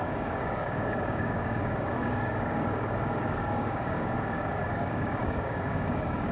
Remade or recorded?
remade